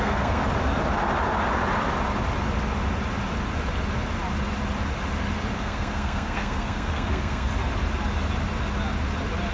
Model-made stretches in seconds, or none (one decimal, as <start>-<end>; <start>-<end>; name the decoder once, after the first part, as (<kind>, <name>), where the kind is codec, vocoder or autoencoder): 0.0-0.4 (codec, SNAC); 5.6-7.5